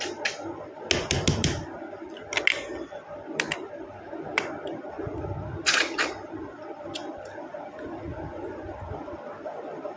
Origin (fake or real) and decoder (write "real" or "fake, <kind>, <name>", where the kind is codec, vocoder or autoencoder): real